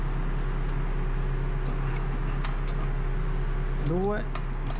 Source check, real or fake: real